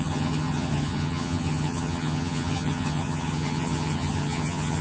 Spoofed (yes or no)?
yes